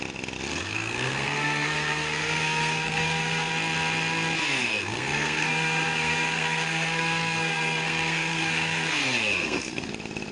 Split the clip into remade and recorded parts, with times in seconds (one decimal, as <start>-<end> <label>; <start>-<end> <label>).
0.0-0.5 recorded; 0.5-3.5 remade; 3.5-4.6 recorded; 4.6-9.9 remade; 9.9-10.3 recorded